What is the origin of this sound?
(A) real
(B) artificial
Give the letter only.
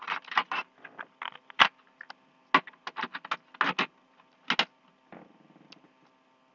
A